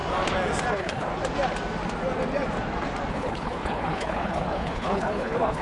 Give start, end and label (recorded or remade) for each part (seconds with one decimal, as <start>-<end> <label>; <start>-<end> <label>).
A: 0.0-0.7 recorded; 0.7-1.1 remade; 1.1-3.1 recorded; 3.1-5.6 remade